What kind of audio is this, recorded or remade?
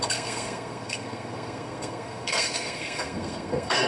remade